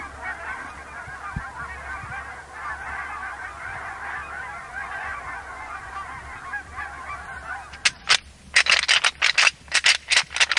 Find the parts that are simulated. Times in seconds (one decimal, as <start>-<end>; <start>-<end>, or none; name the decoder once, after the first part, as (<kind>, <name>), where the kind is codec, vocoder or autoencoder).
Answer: 3.2-4.0 (vocoder, Vocos); 4.6-5.9